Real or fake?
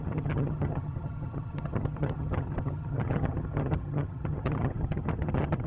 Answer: fake